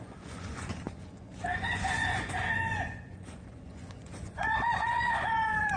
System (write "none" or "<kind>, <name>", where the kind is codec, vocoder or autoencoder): vocoder, Vocos